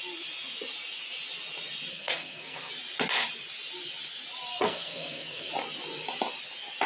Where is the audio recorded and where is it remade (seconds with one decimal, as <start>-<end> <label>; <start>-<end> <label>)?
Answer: 0.0-1.9 recorded; 1.9-2.7 remade; 2.7-4.5 recorded; 4.5-5.5 remade; 5.5-6.9 recorded